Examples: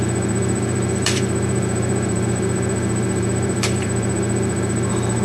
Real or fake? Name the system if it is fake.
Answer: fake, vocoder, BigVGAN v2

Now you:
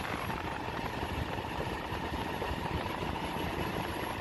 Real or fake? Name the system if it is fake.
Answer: fake, vocoder, BigVGAN v2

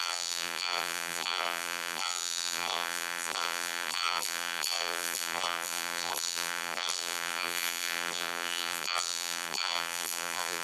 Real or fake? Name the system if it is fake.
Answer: fake, vocoder, BigVGAN v2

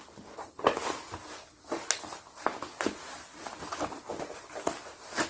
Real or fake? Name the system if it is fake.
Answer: fake, vocoder, BigVGAN v2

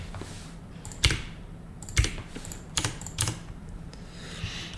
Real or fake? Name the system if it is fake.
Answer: fake, vocoder, BigVGAN v2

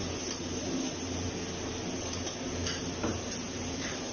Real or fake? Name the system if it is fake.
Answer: real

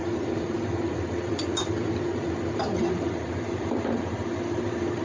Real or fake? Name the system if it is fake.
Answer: fake, vocoder, BigVGAN v2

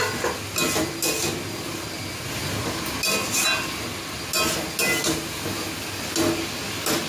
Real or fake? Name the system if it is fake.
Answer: real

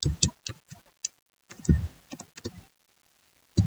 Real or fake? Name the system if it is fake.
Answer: real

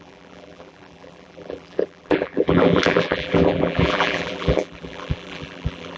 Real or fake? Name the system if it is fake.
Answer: fake, vocoder, BigVGAN v2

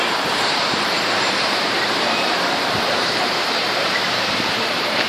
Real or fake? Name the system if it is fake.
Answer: fake, vocoder, BigVGAN v2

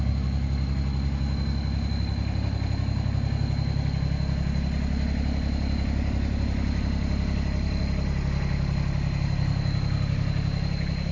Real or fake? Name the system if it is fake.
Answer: real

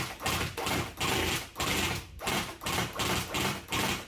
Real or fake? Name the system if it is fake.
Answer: fake, vocoder, BigVGAN v2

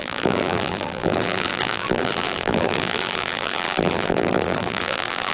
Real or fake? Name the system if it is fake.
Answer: fake, vocoder, BigVGAN v2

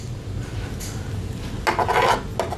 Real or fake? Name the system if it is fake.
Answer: real